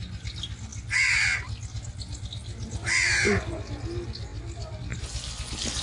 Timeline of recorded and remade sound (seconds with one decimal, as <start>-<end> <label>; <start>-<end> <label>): 0.0-4.3 recorded; 4.3-5.0 remade; 5.0-5.8 recorded